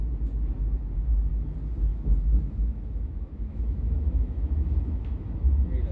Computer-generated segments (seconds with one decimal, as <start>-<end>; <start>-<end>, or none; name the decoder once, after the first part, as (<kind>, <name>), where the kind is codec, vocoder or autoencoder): 1.9-5.4 (autoencoder, DAC-VAE)